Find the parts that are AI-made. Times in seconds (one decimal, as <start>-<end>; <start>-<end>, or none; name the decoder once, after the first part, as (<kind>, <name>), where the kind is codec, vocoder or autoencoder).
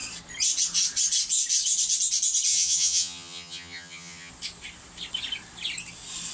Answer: 2.5-4.3 (vocoder, HiFi-GAN)